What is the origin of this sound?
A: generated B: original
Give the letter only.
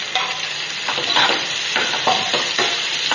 A